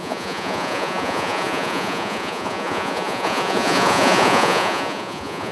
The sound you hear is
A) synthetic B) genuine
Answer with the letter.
A